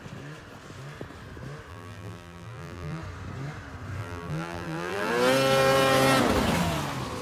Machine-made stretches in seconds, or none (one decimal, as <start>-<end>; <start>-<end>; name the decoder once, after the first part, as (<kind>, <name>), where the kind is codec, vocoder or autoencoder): 1.7-3.0 (vocoder, BigVGAN v2); 4.0-5.1